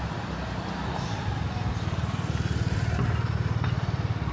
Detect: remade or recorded recorded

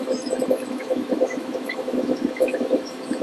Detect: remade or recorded remade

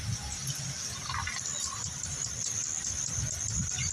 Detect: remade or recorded recorded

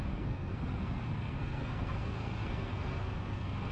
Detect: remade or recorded remade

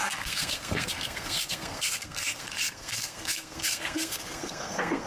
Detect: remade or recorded remade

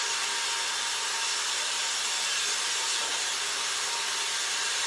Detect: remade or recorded recorded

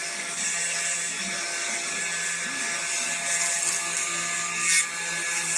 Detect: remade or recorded recorded